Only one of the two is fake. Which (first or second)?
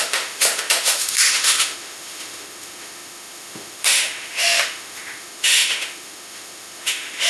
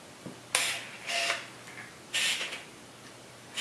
first